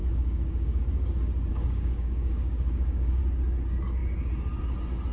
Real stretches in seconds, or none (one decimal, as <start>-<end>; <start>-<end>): 0.8-1.5; 3.2-5.1